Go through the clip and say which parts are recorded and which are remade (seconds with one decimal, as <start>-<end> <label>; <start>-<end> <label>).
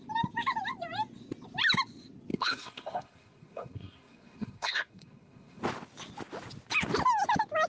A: 0.0-2.3 recorded; 2.3-5.6 remade; 5.6-7.7 recorded